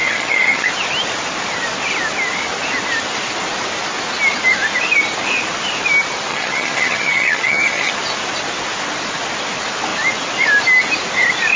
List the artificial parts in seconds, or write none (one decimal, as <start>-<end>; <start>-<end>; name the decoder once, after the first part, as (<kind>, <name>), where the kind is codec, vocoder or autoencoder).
0.0-0.7 (vocoder, HiFi-GAN); 6.3-7.9